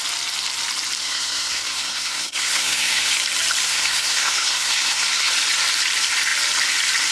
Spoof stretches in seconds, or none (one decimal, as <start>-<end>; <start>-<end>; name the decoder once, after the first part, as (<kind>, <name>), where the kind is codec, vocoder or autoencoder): 1.0-3.1 (codec, SNAC); 3.7-5.3